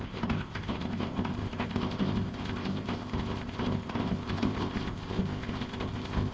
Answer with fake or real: fake